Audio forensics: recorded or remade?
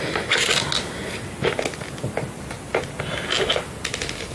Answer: recorded